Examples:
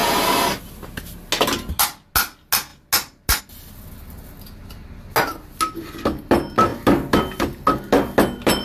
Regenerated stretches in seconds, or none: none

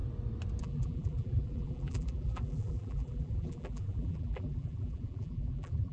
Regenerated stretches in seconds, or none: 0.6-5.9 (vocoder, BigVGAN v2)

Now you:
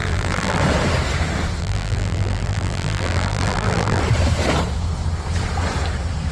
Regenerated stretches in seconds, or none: 0.0-0.6 (vocoder, BigVGAN v2); 1.6-4.0

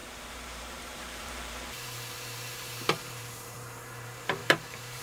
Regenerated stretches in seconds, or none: 0.0-5.0 (vocoder, BigVGAN v2)

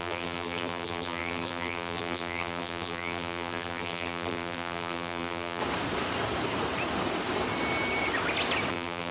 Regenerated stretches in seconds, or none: 0.0-5.6 (vocoder, BigVGAN v2); 8.7-9.1

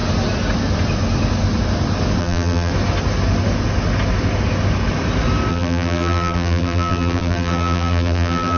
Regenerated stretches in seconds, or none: 2.2-2.7 (vocoder, BigVGAN v2); 5.5-8.6

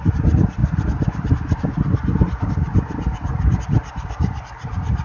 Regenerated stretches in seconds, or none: none

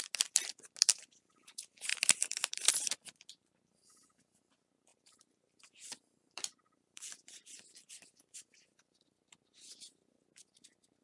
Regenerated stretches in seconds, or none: 1.9-2.7 (vocoder, BigVGAN v2); 4.9-8.4